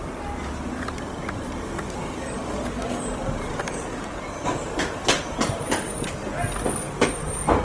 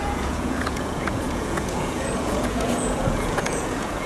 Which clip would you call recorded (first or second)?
first